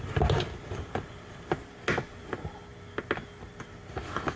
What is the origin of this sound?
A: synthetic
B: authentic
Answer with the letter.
B